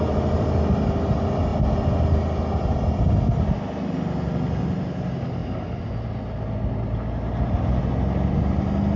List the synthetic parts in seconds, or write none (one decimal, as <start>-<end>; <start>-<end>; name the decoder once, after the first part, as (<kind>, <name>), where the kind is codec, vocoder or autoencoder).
none